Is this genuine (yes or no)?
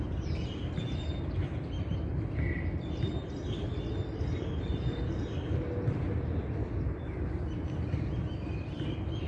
yes